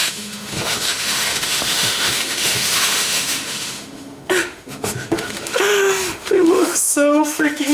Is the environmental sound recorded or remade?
remade